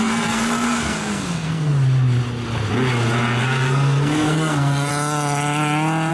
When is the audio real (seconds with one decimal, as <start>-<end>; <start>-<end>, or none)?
1.7-3.4; 4.9-6.1